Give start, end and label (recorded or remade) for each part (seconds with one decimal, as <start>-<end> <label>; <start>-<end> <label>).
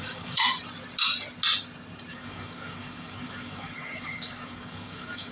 0.0-0.4 remade; 0.4-2.1 recorded; 2.1-5.3 remade